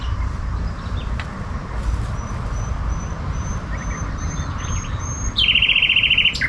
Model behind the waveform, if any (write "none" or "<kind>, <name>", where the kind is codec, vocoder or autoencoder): none